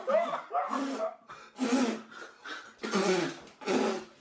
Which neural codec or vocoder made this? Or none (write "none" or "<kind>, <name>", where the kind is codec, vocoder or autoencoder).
none